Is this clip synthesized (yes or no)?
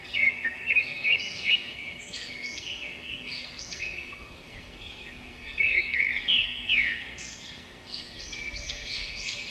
yes